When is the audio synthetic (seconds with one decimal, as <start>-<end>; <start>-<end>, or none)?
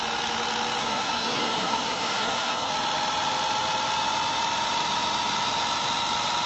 0.8-2.7